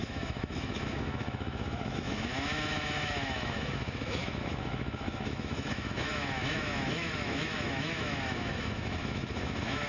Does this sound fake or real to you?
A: fake